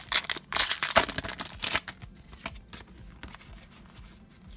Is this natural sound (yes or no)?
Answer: yes